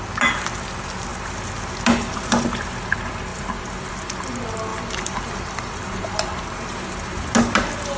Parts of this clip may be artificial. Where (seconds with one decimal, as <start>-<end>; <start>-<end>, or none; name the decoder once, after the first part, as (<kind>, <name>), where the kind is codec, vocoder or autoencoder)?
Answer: 3.3-3.9 (vocoder, BigVGAN v2); 4.7-6.4